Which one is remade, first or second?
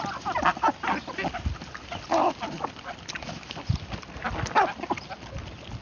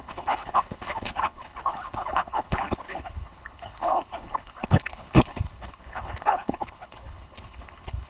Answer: second